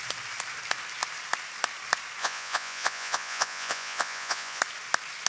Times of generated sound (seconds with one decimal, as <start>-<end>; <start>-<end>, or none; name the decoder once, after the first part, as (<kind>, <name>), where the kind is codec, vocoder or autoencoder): 2.2-4.6 (vocoder, Vocos)